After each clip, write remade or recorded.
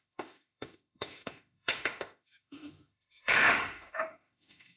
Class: remade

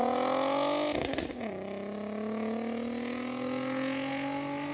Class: recorded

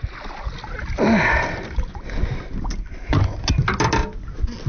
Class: recorded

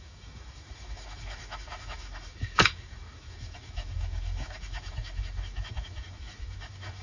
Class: remade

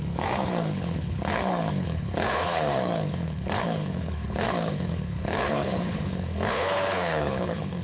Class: remade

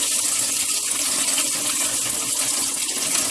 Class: remade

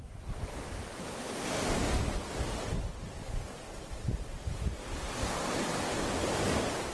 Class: remade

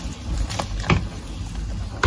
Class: recorded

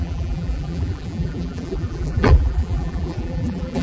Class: remade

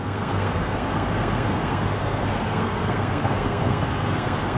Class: remade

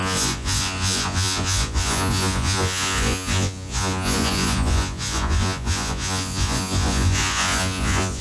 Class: remade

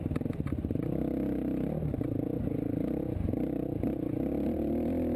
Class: recorded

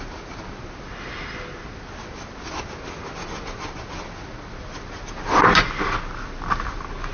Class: recorded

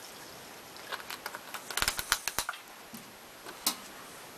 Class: recorded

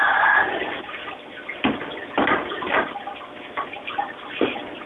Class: recorded